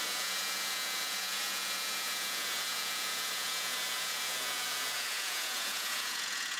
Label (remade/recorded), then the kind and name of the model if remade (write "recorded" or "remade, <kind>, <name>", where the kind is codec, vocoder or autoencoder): remade, vocoder, Vocos